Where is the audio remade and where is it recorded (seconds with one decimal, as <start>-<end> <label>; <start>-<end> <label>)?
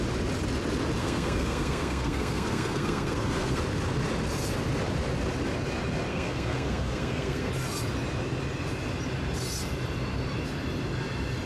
0.0-1.0 recorded; 1.0-3.6 remade; 3.6-6.1 recorded; 6.1-7.5 remade; 7.5-11.5 recorded